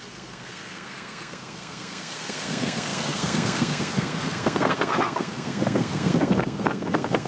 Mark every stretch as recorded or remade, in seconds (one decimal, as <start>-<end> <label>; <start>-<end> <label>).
0.0-7.3 remade